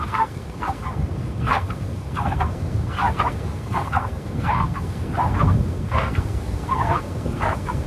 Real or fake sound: fake